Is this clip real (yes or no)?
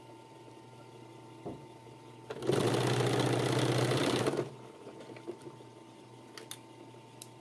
yes